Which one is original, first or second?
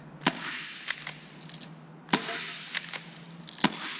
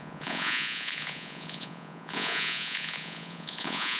first